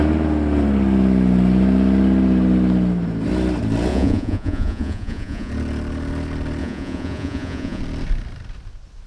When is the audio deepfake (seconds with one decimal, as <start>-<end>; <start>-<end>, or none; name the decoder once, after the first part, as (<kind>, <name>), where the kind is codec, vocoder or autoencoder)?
3.9-5.5 (vocoder, Vocos); 6.6-7.8